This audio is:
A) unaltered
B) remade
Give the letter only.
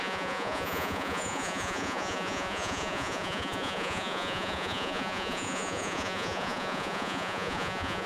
B